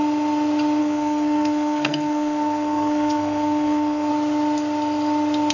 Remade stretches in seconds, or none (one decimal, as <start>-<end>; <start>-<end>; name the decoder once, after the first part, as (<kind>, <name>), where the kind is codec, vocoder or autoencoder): 0.8-4.1 (codec, SNAC)